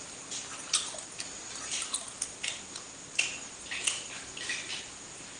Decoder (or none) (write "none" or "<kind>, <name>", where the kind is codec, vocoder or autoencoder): none